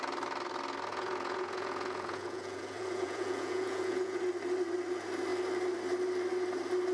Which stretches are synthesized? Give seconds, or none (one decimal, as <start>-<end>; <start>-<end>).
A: 0.9-4.2